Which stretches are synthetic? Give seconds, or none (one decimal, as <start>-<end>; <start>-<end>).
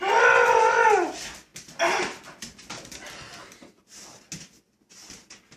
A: none